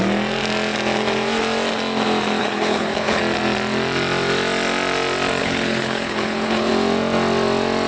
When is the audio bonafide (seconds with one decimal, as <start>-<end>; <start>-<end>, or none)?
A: 0.0-2.4; 3.2-5.4; 6.7-7.9